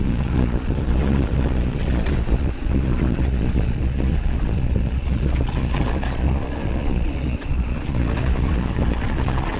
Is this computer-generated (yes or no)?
yes